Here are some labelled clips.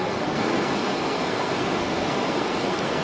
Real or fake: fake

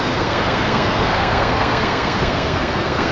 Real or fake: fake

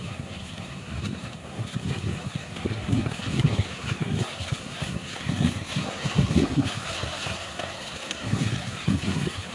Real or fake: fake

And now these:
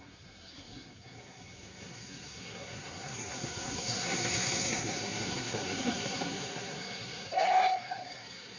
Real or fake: fake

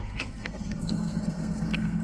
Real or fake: fake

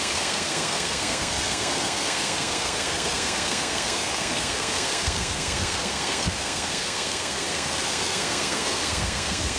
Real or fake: fake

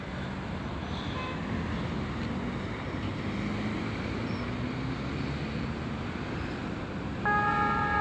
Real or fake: real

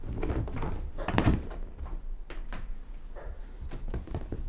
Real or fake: real